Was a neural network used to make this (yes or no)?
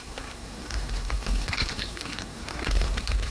yes